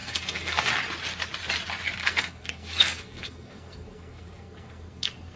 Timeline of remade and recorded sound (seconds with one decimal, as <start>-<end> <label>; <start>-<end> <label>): 0.0-0.7 remade; 0.7-2.0 recorded; 2.0-5.4 remade